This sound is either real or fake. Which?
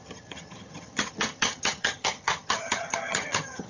fake